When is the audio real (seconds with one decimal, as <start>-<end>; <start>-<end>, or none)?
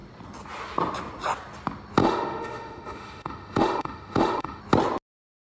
0.0-2.0; 4.6-5.4